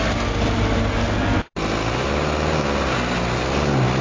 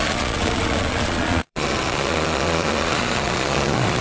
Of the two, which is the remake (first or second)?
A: second